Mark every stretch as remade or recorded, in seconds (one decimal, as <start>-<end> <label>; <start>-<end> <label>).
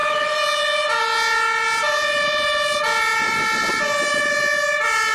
0.0-5.1 recorded